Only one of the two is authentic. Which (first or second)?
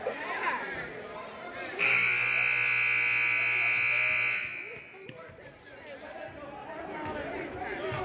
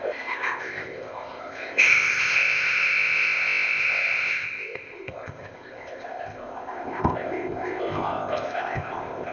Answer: first